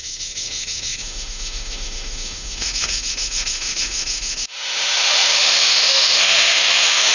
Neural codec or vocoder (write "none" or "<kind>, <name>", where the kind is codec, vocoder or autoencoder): autoencoder, DAC-VAE